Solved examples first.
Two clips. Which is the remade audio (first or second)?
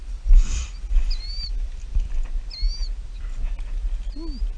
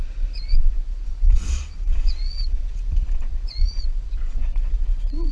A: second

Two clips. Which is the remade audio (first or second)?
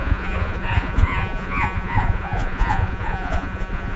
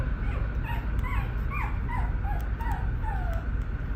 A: first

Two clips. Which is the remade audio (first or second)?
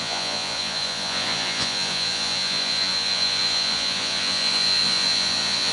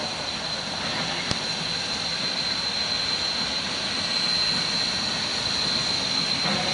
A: first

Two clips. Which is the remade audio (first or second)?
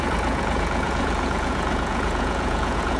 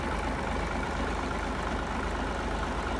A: first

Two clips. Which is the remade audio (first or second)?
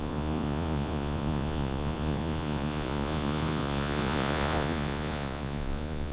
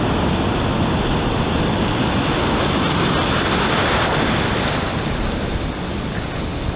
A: first